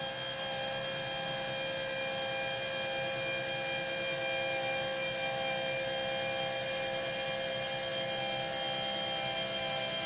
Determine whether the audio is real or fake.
real